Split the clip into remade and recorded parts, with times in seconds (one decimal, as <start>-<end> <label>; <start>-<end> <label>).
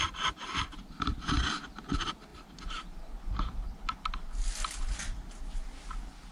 0.0-6.3 recorded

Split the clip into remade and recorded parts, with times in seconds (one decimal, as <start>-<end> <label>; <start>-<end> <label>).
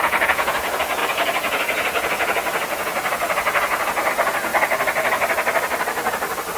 0.0-4.5 remade; 4.5-6.6 recorded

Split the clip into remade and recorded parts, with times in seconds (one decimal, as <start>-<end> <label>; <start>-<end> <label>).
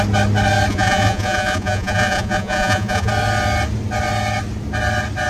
0.0-0.7 recorded; 0.7-3.1 remade; 3.1-5.3 recorded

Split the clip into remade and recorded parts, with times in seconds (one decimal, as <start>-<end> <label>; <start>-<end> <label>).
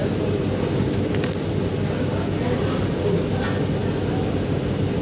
0.0-5.0 recorded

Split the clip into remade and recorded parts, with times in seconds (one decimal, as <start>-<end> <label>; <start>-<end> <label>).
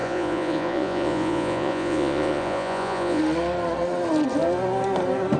0.0-3.2 remade; 3.2-5.4 recorded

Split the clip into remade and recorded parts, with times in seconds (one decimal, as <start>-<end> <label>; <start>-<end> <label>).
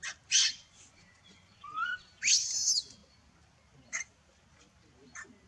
0.0-0.4 recorded; 0.4-1.9 remade; 1.9-5.5 recorded